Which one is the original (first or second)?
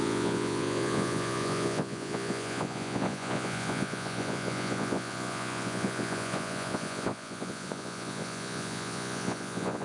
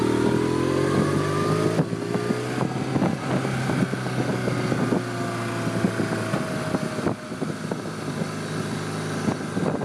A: second